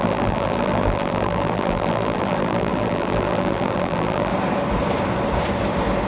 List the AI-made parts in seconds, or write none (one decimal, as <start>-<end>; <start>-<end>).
0.0-4.3

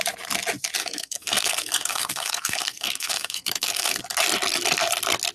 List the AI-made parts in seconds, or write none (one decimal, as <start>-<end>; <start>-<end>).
0.8-4.0

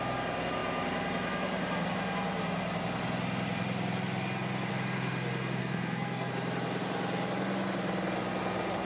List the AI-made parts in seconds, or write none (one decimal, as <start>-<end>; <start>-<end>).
5.6-6.3

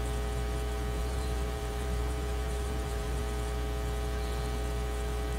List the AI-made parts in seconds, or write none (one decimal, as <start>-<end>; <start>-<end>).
1.0-3.2

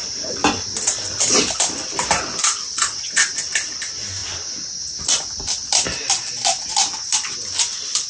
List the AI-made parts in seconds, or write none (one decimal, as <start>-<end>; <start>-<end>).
0.0-3.1

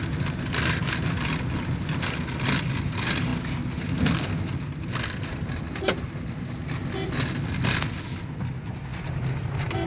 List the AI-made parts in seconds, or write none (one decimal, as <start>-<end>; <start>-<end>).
none